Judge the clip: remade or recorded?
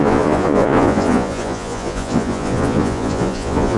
remade